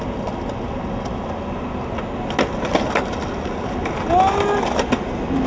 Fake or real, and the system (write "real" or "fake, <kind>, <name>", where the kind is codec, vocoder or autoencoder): real